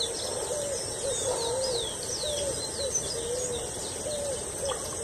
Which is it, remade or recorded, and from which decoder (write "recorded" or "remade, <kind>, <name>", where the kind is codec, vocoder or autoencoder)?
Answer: recorded